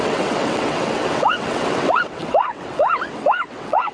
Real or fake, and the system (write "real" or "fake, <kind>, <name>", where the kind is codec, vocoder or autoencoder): fake, vocoder, WaveNeXt